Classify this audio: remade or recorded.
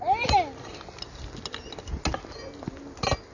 recorded